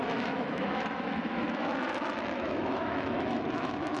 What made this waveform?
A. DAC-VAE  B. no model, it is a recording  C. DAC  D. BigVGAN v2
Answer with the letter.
A